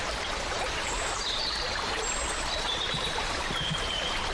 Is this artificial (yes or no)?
yes